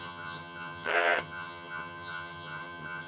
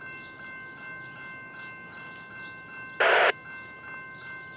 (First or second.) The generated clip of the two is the first